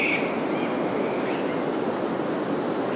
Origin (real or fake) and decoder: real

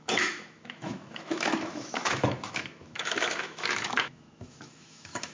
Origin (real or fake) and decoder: fake, autoencoder, DAC-VAE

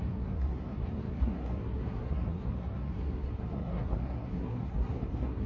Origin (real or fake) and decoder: fake, codec, SNAC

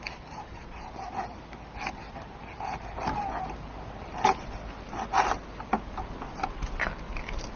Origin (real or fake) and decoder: real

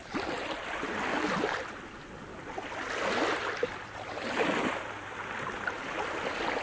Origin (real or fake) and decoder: real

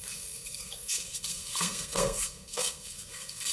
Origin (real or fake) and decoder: fake, codec, SNAC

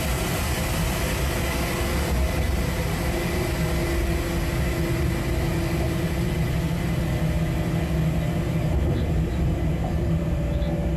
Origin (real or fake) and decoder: real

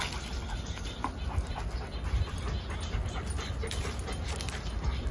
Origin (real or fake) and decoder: real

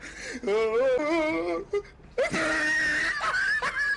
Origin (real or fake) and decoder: real